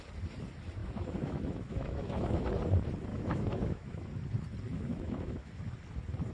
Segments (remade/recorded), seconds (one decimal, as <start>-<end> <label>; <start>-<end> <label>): 0.0-0.8 recorded; 0.8-2.5 remade; 2.5-3.1 recorded; 3.1-4.1 remade; 4.1-4.7 recorded; 4.7-5.5 remade; 5.5-6.3 recorded